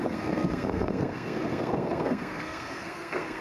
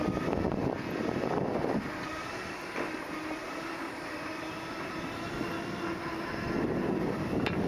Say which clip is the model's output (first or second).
first